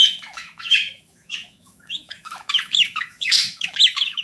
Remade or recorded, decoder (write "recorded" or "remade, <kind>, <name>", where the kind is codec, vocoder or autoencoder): remade, autoencoder, DAC-VAE